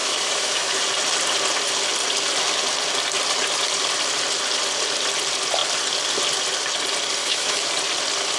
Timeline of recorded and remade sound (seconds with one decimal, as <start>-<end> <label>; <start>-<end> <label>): 0.0-0.8 remade; 0.8-7.2 recorded; 7.2-7.7 remade; 7.7-8.4 recorded